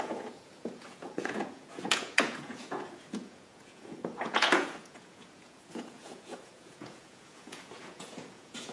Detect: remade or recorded remade